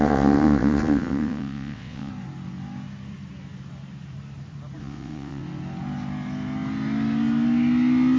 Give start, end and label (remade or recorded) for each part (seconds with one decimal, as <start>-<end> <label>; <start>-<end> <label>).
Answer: 0.0-2.1 remade; 2.1-4.8 recorded; 4.8-5.4 remade; 5.4-8.2 recorded